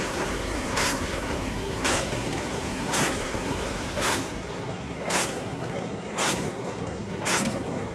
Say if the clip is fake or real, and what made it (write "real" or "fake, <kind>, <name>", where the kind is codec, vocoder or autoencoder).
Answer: fake, codec, SNAC